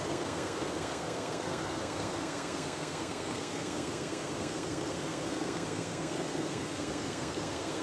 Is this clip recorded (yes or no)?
no